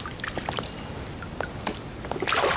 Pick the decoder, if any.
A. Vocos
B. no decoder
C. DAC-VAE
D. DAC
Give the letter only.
B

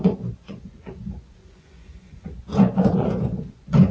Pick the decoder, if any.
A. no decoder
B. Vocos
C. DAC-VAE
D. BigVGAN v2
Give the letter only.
B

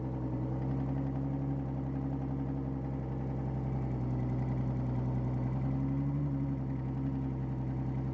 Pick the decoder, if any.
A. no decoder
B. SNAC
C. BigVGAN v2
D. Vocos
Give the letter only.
A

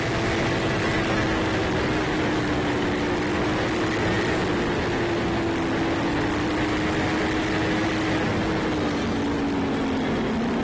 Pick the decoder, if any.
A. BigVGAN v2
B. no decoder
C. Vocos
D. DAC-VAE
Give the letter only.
B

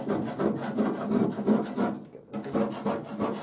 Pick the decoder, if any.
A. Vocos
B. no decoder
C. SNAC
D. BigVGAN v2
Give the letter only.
B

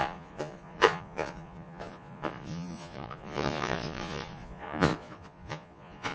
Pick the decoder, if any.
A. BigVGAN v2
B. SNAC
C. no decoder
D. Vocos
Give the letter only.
D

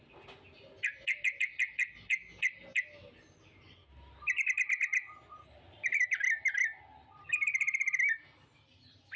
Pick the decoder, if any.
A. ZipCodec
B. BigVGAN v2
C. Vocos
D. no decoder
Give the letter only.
D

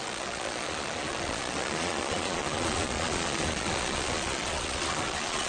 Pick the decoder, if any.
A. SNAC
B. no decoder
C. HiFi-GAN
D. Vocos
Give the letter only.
D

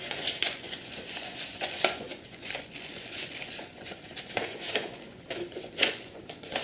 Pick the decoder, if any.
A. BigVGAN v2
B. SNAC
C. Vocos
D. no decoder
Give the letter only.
C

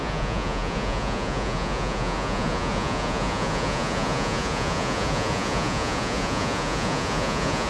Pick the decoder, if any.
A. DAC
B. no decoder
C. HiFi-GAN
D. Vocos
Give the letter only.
D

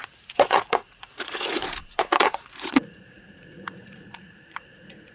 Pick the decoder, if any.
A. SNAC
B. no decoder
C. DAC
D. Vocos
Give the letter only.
D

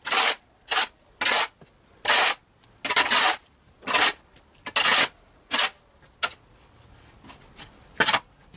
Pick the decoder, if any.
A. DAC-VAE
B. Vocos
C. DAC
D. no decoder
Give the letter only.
D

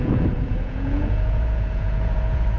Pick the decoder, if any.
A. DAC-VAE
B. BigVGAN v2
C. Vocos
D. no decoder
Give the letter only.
C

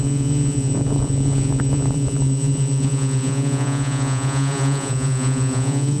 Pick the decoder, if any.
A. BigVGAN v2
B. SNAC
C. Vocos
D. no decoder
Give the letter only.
C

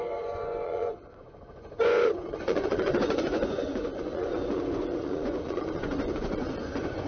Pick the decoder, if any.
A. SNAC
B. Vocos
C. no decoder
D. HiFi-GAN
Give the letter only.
B